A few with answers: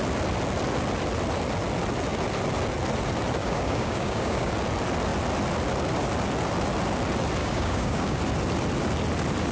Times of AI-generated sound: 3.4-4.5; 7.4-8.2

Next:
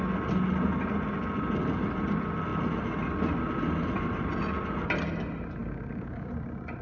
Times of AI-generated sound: 5.6-6.3

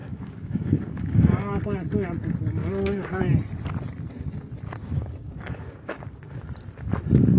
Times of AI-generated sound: 0.0-1.6; 2.6-3.2; 4.8-6.4

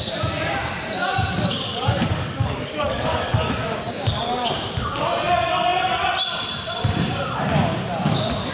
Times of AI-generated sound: 1.0-4.5